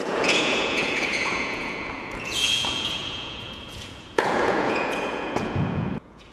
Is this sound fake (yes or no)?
yes